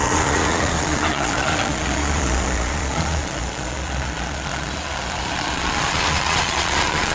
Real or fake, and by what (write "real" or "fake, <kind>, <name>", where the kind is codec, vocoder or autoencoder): fake, vocoder, Vocos